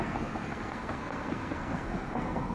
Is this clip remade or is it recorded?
remade